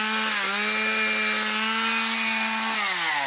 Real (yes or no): yes